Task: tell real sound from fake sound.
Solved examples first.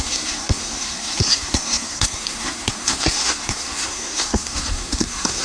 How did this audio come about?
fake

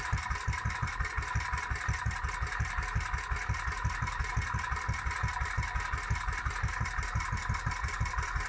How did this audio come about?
real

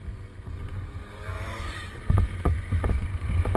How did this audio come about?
fake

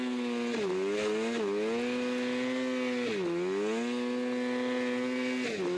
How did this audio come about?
real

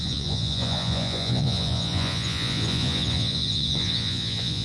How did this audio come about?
fake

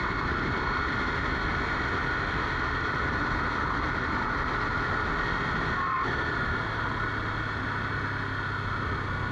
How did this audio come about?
real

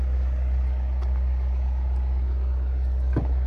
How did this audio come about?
fake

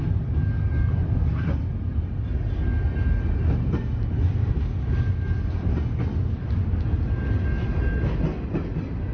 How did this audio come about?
real